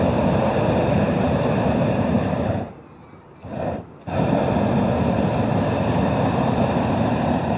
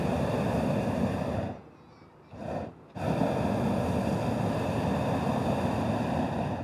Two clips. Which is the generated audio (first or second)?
first